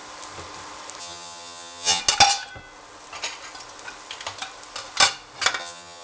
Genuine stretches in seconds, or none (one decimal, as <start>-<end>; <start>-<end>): 0.0-1.0; 2.0-5.6